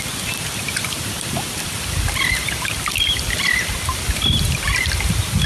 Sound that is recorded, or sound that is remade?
recorded